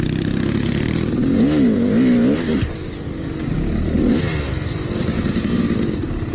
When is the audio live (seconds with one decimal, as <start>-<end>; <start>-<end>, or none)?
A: 0.0-6.3